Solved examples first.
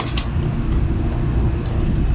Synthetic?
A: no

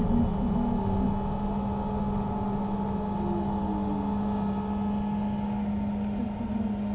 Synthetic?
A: no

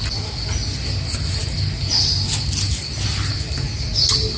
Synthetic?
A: no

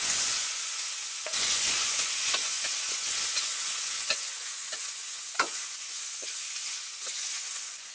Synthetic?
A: yes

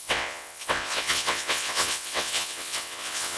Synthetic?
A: yes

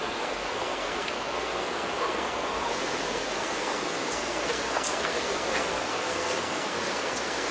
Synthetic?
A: yes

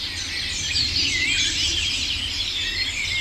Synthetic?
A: no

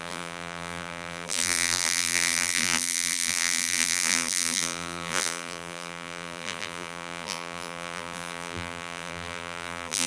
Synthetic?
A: yes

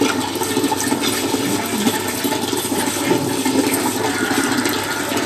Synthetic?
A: no